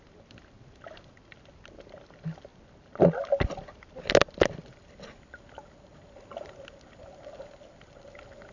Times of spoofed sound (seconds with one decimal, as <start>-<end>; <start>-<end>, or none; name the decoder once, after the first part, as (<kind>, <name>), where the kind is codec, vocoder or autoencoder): none